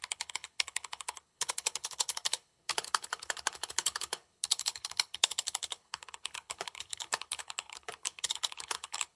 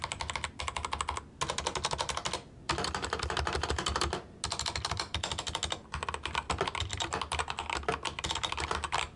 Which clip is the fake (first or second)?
first